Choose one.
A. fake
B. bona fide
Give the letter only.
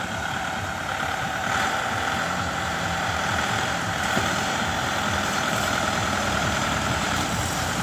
A